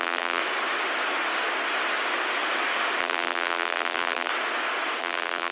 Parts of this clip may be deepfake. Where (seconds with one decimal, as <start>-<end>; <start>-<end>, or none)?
0.0-0.4; 3.0-4.3; 5.0-5.5